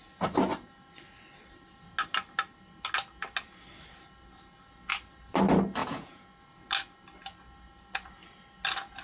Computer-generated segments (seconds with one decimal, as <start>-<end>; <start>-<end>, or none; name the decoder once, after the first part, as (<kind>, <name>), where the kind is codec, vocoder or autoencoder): 5.8-6.3 (vocoder, Vocos)